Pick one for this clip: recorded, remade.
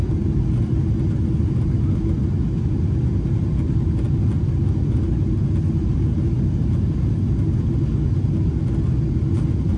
recorded